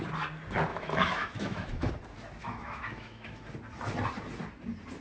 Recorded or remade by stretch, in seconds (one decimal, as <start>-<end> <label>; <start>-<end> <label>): 0.0-0.7 recorded; 0.7-1.9 remade; 1.9-2.4 recorded; 2.4-3.4 remade; 3.4-5.0 recorded